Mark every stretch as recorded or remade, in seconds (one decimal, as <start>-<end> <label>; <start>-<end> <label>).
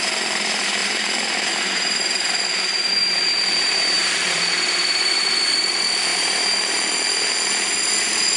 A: 0.0-8.4 remade